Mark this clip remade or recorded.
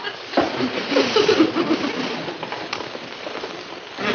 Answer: recorded